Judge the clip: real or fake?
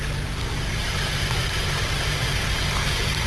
real